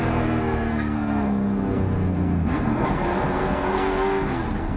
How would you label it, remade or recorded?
remade